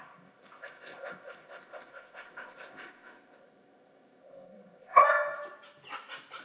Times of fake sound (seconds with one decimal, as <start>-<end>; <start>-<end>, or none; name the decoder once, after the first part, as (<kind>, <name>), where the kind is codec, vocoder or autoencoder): 0.0-5.0 (codec, ZipCodec)